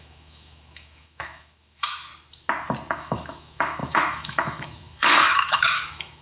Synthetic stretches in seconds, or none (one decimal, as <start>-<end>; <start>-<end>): 0.0-2.1; 2.9-6.2